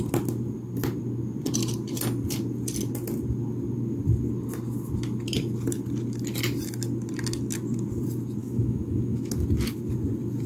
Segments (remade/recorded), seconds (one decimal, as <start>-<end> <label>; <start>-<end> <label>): 0.0-8.4 recorded; 8.4-9.3 remade; 9.3-10.5 recorded